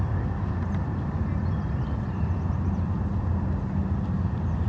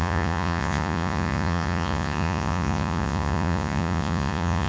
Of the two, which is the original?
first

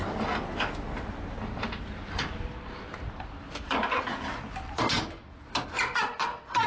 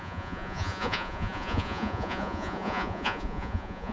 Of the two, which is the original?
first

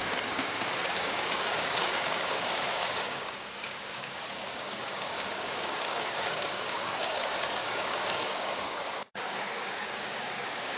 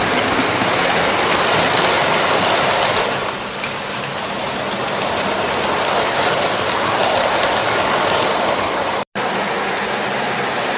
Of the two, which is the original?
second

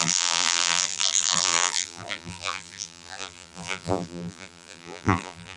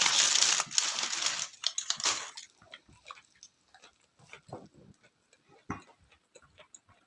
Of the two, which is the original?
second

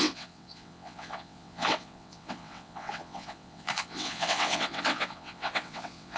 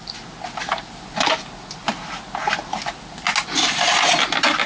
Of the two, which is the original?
second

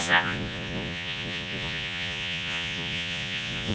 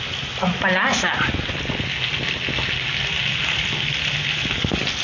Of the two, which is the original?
second